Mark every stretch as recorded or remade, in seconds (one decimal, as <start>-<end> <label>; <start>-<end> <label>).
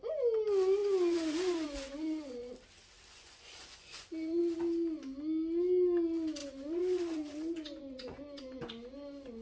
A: 0.0-0.8 recorded; 0.8-2.5 remade; 2.5-3.1 recorded; 3.1-4.4 remade; 4.4-6.4 recorded; 6.4-8.6 remade; 8.6-9.4 recorded